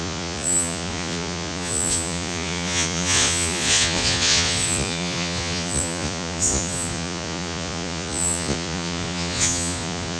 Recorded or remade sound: remade